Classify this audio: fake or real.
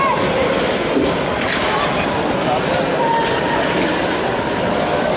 real